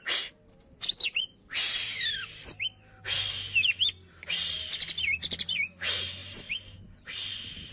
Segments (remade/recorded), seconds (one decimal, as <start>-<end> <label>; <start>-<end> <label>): 0.0-7.7 recorded